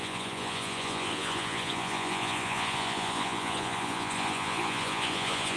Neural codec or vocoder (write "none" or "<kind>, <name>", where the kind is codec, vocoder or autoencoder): vocoder, Vocos